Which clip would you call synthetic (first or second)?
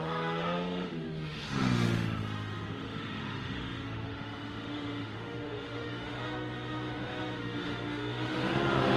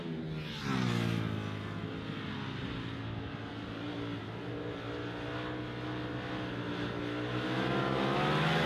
first